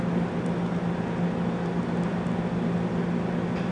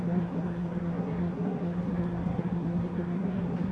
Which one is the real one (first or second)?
first